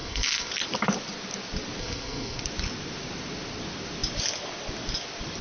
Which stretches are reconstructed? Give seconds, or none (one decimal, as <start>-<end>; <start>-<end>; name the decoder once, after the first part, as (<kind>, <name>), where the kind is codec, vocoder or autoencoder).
0.0-0.5 (codec, SNAC); 1.8-2.4